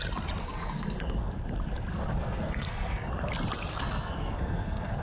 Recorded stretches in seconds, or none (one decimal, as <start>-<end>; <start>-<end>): 0.0-0.4; 1.3-1.9; 3.1-3.7